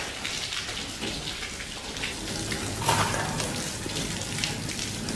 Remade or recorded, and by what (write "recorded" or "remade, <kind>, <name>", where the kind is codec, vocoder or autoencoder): recorded